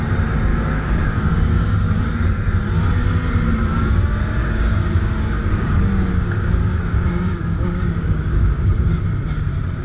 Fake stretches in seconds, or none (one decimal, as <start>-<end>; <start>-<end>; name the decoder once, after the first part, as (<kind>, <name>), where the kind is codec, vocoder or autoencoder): 0.5-2.1 (codec, DAC); 4.4-9.0